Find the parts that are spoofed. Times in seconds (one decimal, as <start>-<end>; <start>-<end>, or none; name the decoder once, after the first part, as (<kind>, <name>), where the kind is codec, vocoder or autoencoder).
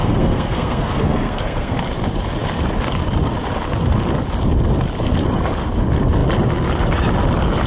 0.0-1.8 (codec, SNAC)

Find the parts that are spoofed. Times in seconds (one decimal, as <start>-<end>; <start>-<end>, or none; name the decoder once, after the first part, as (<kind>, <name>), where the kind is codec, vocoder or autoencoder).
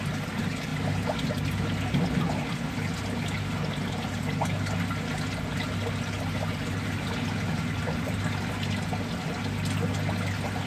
none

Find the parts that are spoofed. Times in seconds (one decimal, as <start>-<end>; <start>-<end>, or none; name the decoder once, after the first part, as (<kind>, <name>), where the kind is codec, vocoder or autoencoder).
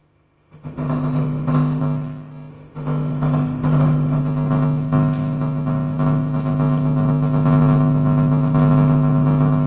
0.0-1.8 (autoencoder, DAC-VAE); 2.5-4.2